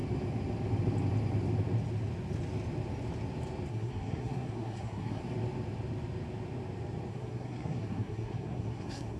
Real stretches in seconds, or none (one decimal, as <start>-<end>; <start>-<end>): 0.0-3.7; 5.2-7.1